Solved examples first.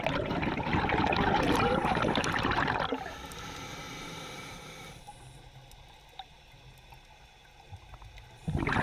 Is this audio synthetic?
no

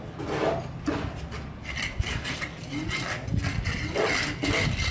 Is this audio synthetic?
no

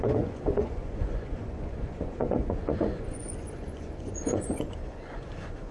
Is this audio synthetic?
yes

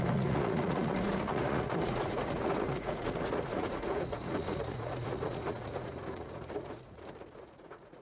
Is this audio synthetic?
yes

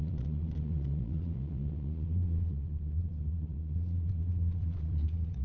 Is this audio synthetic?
yes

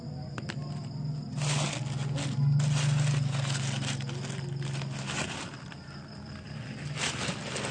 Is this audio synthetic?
no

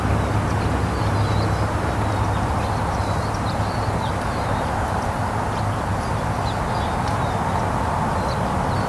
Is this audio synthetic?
no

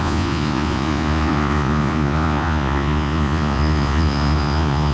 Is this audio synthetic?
yes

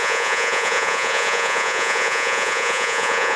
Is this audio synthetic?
yes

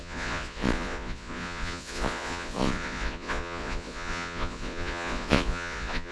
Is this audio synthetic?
yes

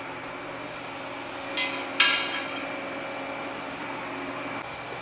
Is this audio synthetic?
no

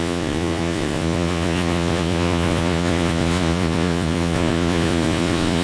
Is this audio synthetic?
yes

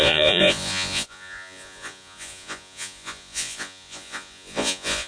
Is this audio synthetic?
yes